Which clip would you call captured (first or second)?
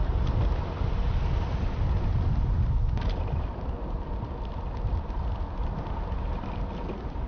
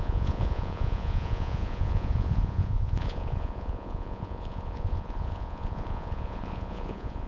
first